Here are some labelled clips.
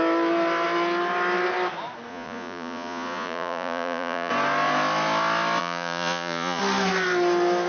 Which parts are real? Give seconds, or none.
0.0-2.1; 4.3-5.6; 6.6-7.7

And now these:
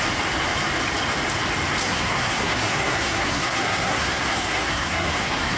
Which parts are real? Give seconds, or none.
0.0-1.8

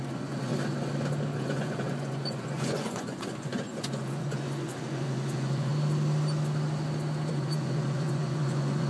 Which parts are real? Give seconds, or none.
0.5-1.4; 5.7-7.3

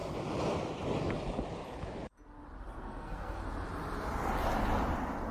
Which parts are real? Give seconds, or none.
0.0-2.6; 3.4-5.3

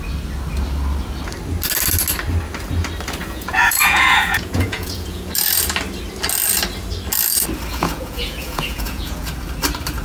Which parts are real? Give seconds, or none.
0.0-3.2; 5.3-7.7; 9.3-10.0

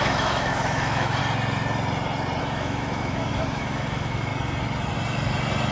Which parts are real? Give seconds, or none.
1.2-2.4; 4.3-5.7

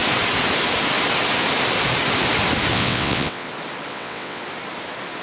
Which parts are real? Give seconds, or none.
0.0-2.7; 3.5-3.9; 4.4-5.2

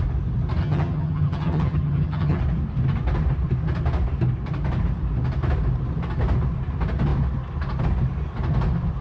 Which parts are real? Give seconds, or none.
0.0-0.6; 2.4-9.0